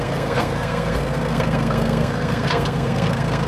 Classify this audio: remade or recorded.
remade